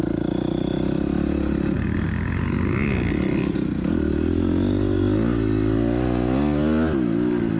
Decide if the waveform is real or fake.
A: real